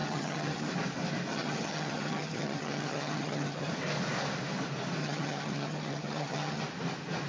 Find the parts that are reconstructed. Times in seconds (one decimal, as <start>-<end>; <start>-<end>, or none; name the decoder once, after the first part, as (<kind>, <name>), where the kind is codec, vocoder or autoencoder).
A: 0.0-0.7 (vocoder, HiFi-GAN); 1.3-3.7; 5.0-6.6